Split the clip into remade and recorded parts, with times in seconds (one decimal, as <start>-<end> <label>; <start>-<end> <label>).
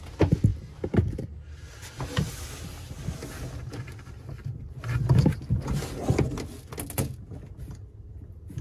0.0-8.6 recorded